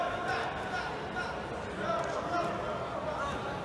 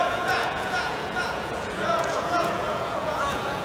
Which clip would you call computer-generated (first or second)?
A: second